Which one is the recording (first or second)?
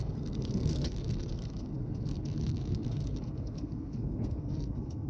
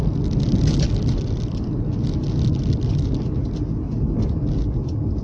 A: second